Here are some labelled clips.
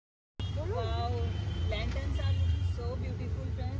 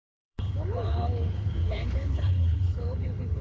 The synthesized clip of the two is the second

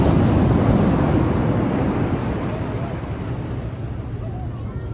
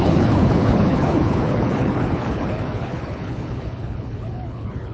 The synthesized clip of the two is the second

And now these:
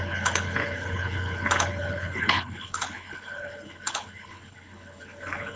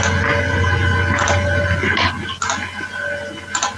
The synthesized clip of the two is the first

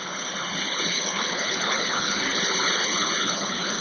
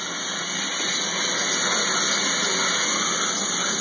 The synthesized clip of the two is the first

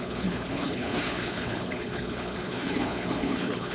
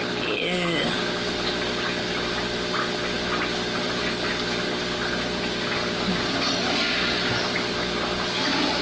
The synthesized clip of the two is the first